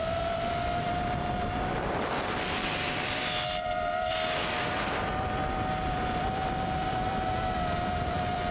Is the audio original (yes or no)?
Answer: no